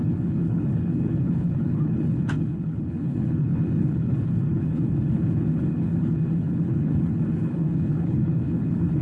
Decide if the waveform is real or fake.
fake